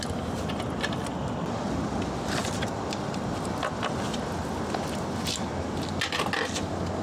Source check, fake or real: real